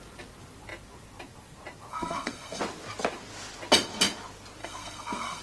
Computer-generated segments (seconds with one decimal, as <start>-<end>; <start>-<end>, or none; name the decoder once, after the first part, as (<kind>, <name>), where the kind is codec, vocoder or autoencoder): 1.9-2.6 (codec, SNAC); 4.6-5.4